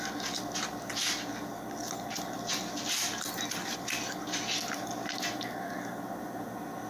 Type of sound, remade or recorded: recorded